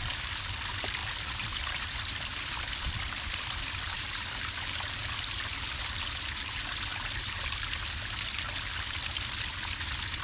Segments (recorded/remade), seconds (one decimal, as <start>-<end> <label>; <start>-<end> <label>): 0.0-1.0 recorded; 1.0-6.1 remade; 6.1-10.2 recorded